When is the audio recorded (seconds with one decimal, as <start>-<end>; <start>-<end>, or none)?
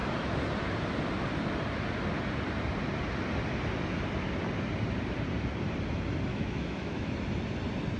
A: 0.0-6.3; 7.1-8.0